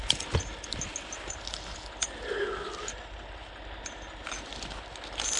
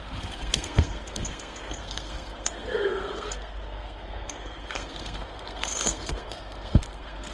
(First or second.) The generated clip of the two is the second